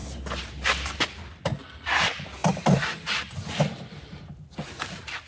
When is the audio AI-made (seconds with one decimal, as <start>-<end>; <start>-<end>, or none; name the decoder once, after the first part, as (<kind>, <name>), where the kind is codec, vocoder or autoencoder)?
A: 2.4-4.5 (vocoder, BigVGAN v2)